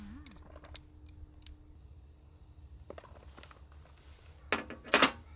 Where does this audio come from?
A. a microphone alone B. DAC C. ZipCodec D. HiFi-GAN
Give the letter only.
A